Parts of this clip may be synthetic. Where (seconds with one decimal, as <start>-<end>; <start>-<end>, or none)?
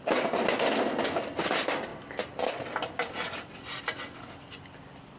none